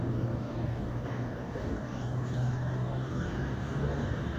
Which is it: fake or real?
fake